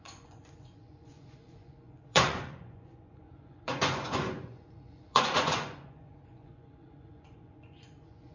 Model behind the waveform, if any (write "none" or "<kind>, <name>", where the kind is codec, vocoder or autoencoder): vocoder, Vocos